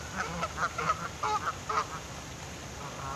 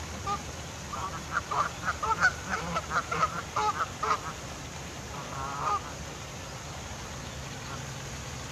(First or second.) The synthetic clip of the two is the second